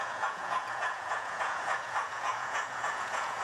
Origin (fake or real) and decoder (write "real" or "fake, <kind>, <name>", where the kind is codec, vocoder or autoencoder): fake, vocoder, Vocos